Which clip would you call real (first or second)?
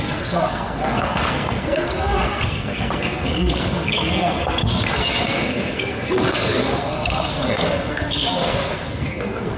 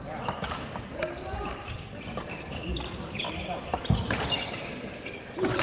second